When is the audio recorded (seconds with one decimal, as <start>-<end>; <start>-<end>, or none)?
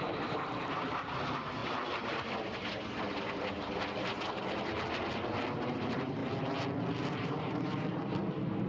1.6-5.1; 6.2-7.1